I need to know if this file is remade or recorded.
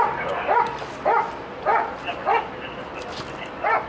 recorded